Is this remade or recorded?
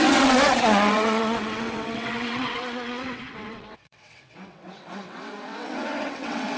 remade